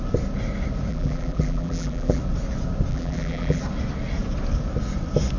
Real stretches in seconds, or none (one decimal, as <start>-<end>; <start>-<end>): 0.0-0.9; 2.2-2.9; 3.6-5.4